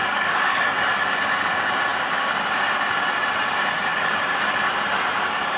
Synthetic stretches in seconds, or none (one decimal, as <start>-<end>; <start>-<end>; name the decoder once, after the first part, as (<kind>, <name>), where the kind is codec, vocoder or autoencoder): 0.0-0.6 (codec, DAC)